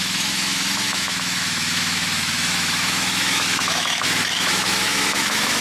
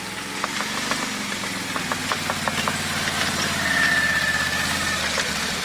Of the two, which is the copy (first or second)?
first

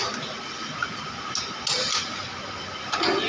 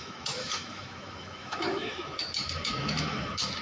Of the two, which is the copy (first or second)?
second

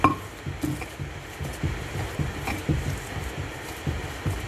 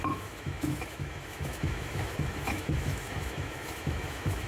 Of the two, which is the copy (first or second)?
second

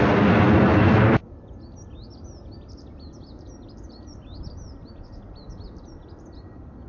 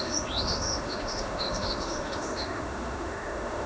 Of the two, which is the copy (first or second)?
second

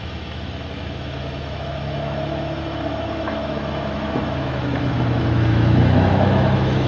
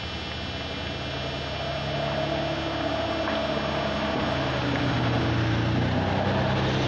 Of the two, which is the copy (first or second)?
first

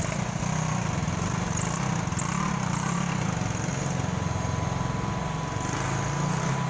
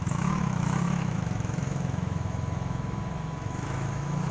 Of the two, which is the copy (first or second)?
second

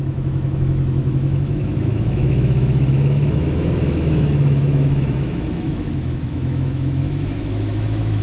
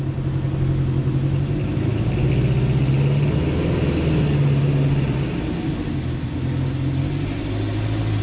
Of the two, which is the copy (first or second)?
first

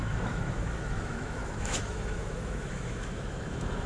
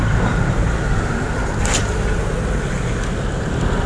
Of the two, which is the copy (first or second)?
first